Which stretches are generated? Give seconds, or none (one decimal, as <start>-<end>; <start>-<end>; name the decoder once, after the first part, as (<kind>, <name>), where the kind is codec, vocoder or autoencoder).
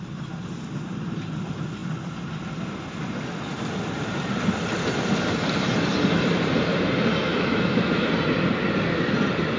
7.3-8.1 (autoencoder, DAC-VAE)